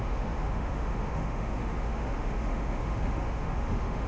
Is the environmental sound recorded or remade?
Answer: remade